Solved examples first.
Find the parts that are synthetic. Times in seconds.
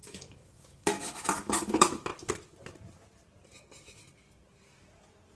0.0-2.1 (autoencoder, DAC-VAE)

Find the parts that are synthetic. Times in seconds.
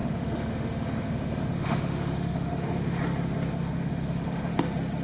0.0-3.0 (autoencoder, DAC-VAE); 3.6-4.5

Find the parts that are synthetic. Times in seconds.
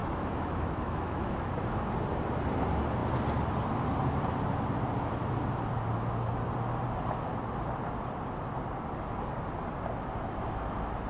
0.0-1.5 (autoencoder, DAC-VAE)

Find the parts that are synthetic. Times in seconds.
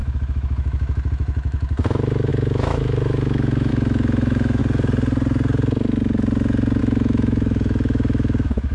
0.0-4.6 (autoencoder, DAC-VAE); 6.8-8.7